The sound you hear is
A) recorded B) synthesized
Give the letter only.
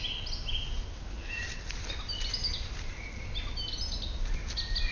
A